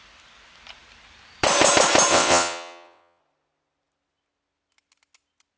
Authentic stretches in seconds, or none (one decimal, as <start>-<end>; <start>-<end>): 0.0-2.1; 3.2-5.6